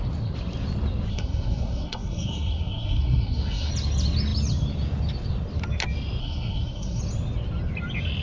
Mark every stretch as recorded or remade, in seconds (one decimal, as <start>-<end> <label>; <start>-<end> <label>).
0.0-1.1 recorded; 1.1-3.7 remade; 3.7-6.2 recorded; 6.2-7.0 remade; 7.0-8.2 recorded